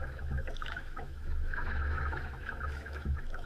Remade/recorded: remade